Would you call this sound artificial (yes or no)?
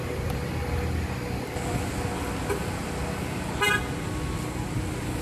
no